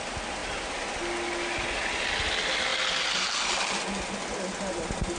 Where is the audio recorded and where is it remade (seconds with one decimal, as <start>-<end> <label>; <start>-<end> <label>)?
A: 0.0-5.2 recorded